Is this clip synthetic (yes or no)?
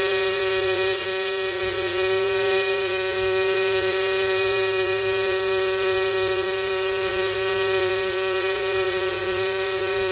yes